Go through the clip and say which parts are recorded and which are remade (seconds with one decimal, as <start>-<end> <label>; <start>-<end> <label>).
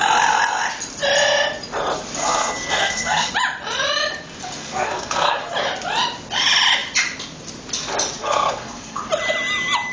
0.0-2.2 recorded; 2.2-3.3 remade; 3.3-4.6 recorded; 4.6-5.5 remade; 5.5-8.2 recorded; 8.2-9.0 remade; 9.0-9.9 recorded